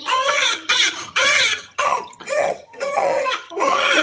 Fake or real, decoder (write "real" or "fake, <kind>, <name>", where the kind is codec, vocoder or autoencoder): fake, vocoder, HiFi-GAN